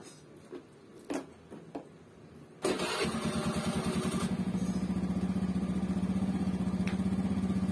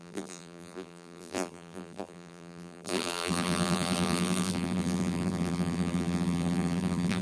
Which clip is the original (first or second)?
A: first